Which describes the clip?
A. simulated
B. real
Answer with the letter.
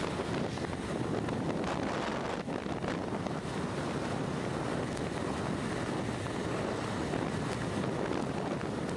B